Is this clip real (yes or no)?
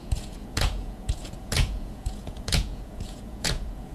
no